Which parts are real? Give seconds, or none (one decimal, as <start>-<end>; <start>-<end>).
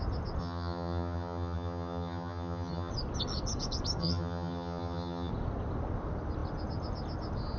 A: 0.0-0.4; 2.9-4.0; 5.3-7.6